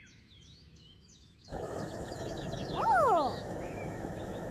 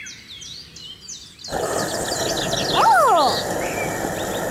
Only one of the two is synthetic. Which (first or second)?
first